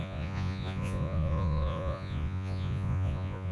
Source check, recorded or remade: remade